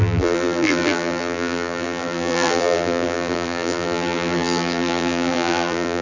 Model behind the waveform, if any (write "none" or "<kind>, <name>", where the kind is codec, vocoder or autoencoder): vocoder, BigVGAN v2